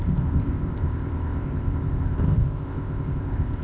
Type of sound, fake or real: fake